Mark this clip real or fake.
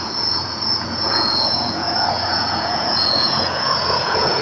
fake